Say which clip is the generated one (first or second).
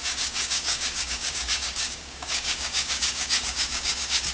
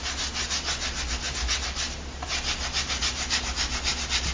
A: first